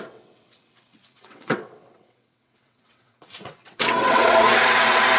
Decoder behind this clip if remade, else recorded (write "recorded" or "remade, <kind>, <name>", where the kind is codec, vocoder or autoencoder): remade, vocoder, WaveNeXt